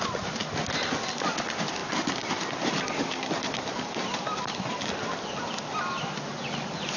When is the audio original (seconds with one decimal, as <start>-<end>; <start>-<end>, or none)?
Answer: 0.0-7.0